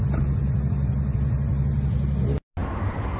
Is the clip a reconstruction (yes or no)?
no